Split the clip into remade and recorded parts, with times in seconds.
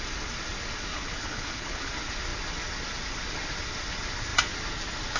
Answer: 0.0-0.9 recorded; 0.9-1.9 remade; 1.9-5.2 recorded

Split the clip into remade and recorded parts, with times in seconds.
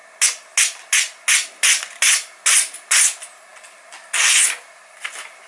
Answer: 0.0-5.5 recorded